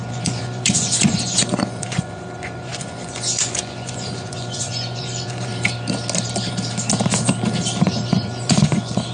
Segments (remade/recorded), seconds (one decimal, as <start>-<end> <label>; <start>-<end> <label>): 0.0-5.5 remade; 5.5-7.8 recorded; 7.8-9.1 remade

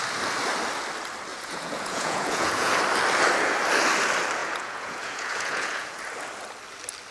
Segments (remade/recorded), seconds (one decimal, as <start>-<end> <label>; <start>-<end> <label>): 0.0-1.3 recorded; 1.3-2.7 remade; 2.7-4.4 recorded; 4.4-6.0 remade; 6.0-7.1 recorded

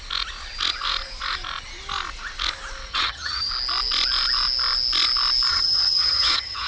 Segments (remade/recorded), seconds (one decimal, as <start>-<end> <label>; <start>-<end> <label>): 0.0-2.9 recorded; 2.9-3.5 remade; 3.5-5.5 recorded; 5.5-6.7 remade